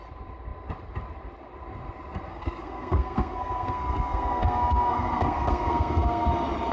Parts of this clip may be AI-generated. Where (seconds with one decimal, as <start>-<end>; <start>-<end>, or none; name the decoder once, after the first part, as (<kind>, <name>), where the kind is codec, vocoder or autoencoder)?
2.3-6.3 (codec, SNAC)